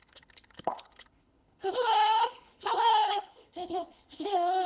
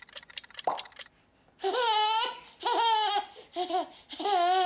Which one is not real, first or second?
first